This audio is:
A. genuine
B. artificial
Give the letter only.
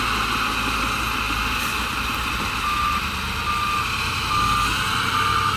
A